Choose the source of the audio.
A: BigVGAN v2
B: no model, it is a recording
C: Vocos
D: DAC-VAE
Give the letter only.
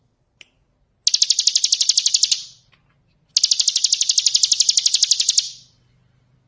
B